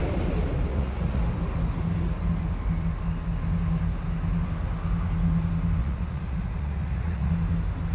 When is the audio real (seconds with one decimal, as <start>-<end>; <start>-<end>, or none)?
0.0-0.7; 1.2-5.8; 7.3-7.9